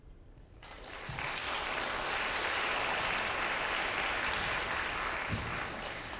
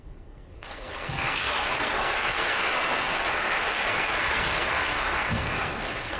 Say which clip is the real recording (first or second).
first